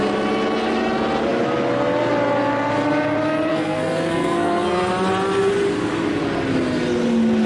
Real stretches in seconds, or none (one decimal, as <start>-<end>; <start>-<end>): 0.0-3.5; 4.9-7.5